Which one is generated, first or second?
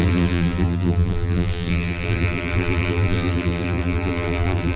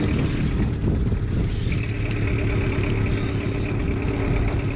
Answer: first